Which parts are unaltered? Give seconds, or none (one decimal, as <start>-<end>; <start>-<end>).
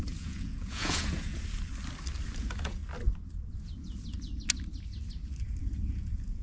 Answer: 1.3-2.4; 2.8-5.6